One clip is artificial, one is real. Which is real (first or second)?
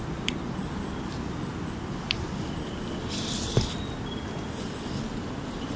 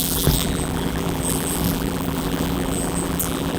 first